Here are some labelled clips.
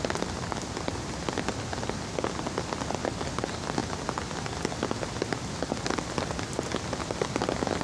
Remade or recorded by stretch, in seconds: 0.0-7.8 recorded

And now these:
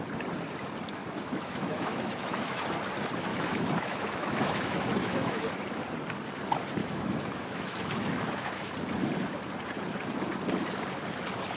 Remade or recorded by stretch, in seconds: 0.0-1.0 recorded; 1.0-2.6 remade; 2.6-3.3 recorded; 3.3-5.4 remade; 5.4-6.8 recorded; 6.8-8.7 remade; 8.7-11.6 recorded